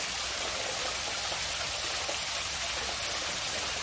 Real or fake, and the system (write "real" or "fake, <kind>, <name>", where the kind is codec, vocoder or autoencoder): real